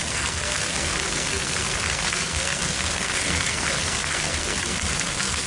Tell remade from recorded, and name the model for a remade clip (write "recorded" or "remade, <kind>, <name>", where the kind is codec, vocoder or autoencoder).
remade, codec, SNAC